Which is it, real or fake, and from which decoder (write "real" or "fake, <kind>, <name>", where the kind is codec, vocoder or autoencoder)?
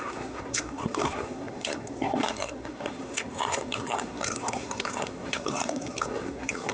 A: fake, codec, SNAC